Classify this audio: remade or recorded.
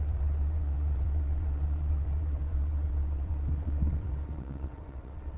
remade